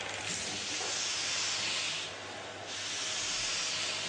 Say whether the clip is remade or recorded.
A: recorded